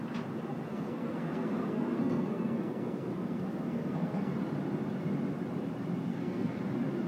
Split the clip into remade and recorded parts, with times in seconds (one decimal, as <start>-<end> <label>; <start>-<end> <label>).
0.0-0.7 recorded; 0.7-4.3 remade; 4.3-6.1 recorded; 6.1-6.6 remade; 6.6-7.1 recorded